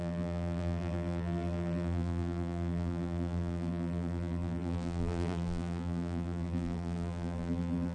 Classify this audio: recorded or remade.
remade